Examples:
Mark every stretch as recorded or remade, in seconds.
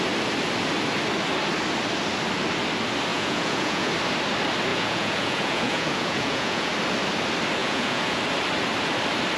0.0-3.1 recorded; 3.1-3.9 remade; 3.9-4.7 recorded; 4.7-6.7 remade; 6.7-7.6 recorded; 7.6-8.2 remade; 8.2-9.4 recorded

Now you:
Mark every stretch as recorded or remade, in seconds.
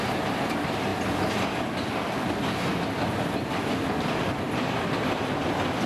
0.0-5.9 recorded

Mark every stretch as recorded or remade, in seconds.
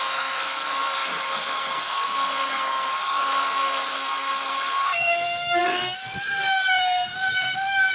0.0-7.9 remade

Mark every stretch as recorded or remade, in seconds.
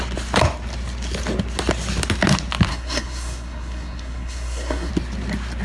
0.0-2.7 recorded; 2.7-4.9 remade; 4.9-5.6 recorded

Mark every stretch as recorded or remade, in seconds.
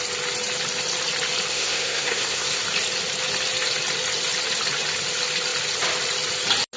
0.0-1.5 recorded; 1.5-2.6 remade; 2.6-6.8 recorded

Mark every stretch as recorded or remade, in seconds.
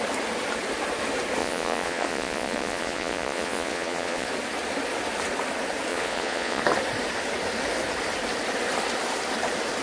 0.0-1.4 recorded; 1.4-4.3 remade; 4.3-5.9 recorded; 5.9-6.6 remade; 6.6-9.8 recorded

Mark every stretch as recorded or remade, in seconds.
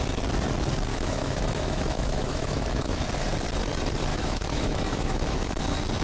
0.0-0.9 recorded; 0.9-3.0 remade; 3.0-4.1 recorded; 4.1-5.6 remade; 5.6-6.0 recorded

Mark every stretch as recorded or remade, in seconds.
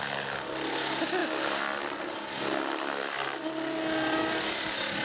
0.0-5.0 recorded